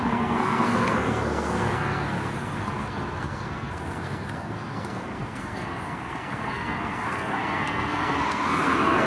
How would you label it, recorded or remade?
remade